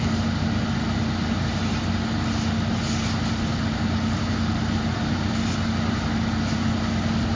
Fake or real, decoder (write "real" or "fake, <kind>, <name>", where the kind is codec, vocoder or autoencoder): real